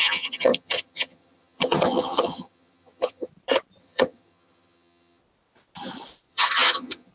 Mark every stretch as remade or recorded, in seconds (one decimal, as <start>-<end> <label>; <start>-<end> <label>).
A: 0.0-3.3 remade; 3.3-3.8 recorded; 3.8-5.2 remade; 5.2-6.3 recorded; 6.3-7.1 remade